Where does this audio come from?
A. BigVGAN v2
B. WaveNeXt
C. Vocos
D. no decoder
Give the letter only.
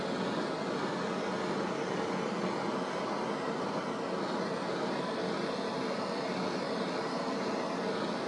D